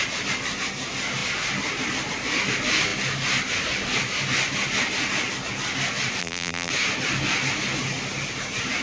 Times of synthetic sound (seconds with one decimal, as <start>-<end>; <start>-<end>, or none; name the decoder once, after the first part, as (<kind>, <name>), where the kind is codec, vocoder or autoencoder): 6.2-6.7 (vocoder, BigVGAN v2)